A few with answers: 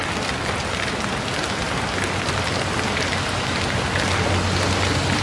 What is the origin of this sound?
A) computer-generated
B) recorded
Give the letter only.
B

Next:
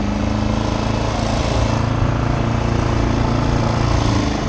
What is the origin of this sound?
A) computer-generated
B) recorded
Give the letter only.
B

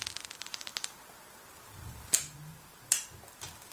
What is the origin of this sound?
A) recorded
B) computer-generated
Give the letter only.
B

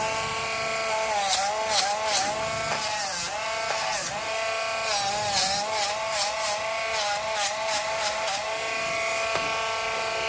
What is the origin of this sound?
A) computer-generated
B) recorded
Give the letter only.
B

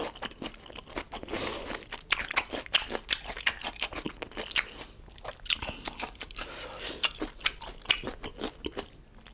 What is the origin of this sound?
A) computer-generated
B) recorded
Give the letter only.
B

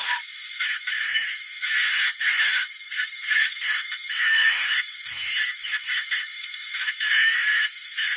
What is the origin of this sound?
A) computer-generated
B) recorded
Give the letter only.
A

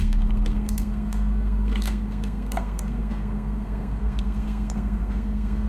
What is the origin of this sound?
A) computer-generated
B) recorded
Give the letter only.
A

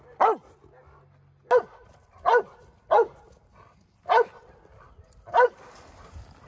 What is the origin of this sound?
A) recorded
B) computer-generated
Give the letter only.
A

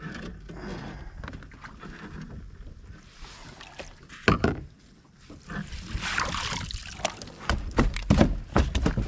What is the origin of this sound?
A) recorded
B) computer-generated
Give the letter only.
A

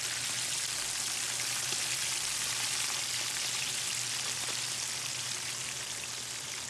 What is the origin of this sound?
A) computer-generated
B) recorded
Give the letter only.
B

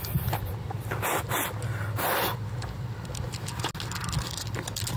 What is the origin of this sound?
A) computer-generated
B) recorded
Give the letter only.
B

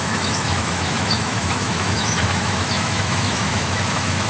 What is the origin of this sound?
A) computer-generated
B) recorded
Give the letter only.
A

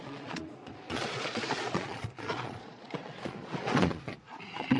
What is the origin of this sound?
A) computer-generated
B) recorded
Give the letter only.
A